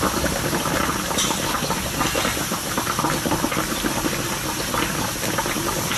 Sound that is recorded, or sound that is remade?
recorded